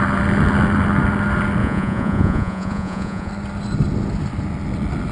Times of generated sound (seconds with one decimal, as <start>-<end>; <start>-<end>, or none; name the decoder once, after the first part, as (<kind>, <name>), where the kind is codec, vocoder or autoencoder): 1.6-3.3 (vocoder, Vocos)